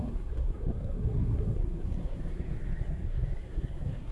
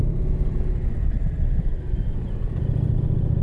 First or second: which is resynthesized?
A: first